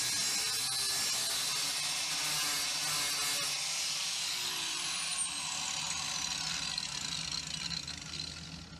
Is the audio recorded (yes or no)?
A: yes